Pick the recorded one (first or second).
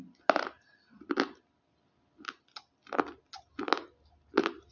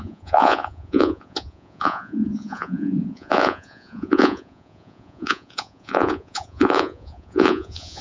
first